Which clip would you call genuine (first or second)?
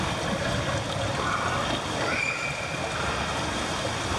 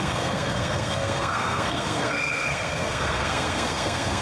first